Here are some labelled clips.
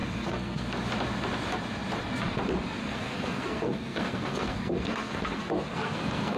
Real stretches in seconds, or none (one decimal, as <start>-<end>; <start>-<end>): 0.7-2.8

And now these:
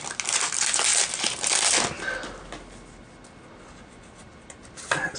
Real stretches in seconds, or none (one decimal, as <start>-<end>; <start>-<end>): 0.0-5.2

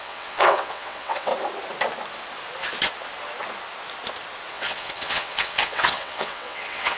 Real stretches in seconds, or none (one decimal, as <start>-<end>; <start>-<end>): 1.3-4.5